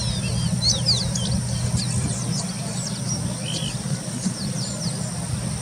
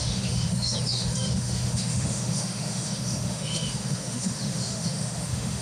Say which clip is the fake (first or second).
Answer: second